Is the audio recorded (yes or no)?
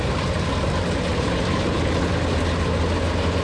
yes